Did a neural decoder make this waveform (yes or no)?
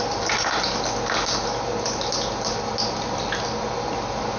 no